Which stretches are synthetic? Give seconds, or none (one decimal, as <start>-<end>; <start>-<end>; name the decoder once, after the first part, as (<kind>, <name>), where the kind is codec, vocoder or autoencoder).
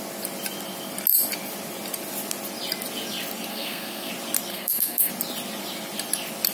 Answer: 3.5-4.1 (codec, SNAC); 4.5-5.1